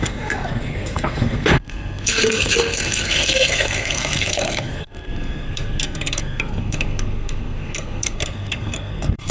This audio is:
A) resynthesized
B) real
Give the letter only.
A